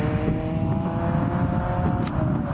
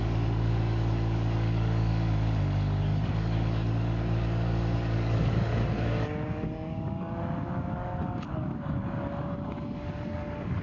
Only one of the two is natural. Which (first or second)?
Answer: first